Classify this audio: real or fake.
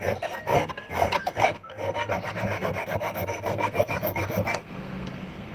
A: fake